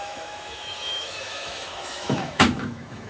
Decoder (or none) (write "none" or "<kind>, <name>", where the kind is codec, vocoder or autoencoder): autoencoder, DAC-VAE